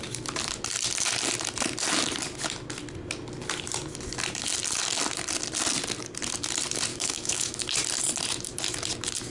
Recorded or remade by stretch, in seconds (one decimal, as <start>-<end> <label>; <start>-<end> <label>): 0.0-6.9 recorded; 6.9-7.6 remade; 7.6-9.3 recorded